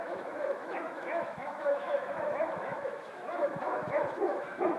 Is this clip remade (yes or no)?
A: yes